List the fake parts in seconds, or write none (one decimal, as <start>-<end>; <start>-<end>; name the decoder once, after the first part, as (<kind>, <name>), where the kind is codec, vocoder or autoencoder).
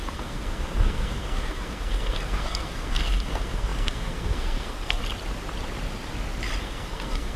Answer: 0.0-5.0 (codec, SNAC); 6.6-7.4